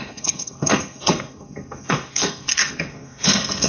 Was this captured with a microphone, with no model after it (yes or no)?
no